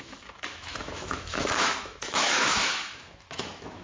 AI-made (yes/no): yes